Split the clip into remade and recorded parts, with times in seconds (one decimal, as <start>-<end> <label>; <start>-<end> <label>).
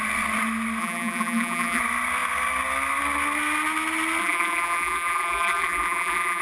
0.0-0.8 recorded; 0.8-1.8 remade; 1.8-4.2 recorded; 4.2-6.4 remade